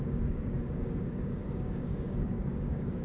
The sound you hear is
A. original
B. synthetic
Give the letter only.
B